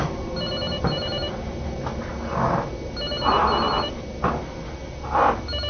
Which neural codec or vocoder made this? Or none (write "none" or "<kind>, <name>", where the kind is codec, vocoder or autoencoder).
none